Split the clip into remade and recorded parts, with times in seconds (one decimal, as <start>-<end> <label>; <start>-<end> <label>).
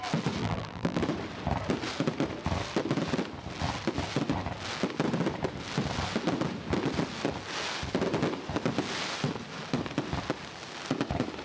0.0-0.4 recorded; 0.4-1.0 remade; 1.0-11.4 recorded